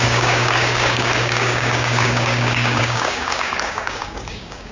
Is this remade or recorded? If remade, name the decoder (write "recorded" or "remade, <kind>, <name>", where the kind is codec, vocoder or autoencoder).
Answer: remade, codec, DAC